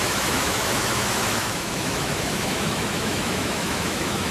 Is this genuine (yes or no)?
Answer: no